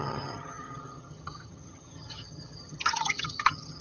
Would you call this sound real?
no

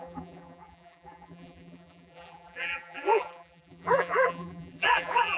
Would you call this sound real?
no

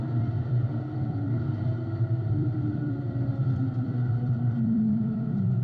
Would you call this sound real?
no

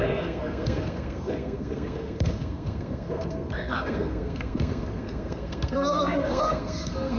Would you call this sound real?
no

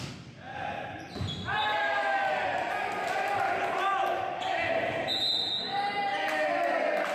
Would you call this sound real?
yes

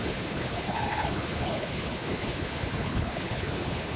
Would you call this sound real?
no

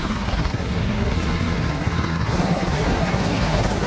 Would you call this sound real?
no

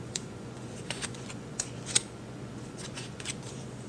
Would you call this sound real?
no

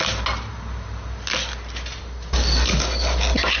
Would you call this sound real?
yes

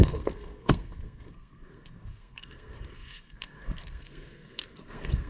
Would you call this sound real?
no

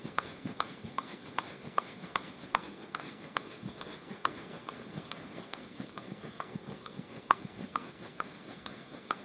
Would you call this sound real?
no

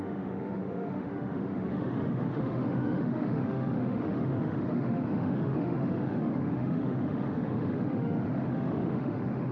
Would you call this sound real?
no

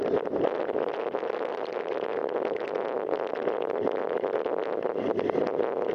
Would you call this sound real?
yes